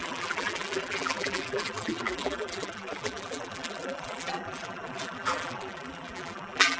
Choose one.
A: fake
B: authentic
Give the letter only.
A